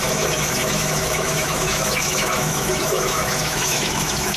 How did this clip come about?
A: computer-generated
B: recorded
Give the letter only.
A